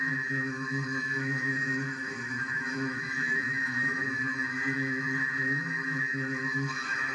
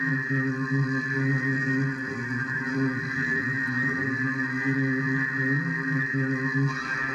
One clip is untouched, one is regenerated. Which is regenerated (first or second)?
first